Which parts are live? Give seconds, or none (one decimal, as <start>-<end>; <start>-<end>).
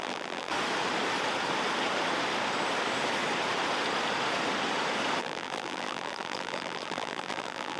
0.5-5.2